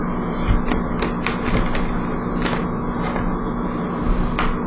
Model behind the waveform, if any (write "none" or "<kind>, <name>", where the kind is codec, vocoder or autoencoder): none